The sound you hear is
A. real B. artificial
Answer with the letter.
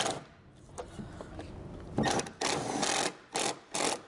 A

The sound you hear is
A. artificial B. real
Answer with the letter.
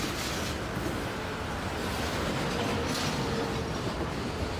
B